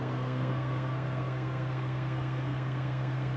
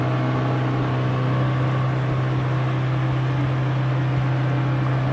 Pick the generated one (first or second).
first